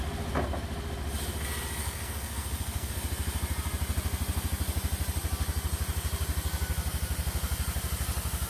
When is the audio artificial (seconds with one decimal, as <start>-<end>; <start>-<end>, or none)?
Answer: 1.8-2.9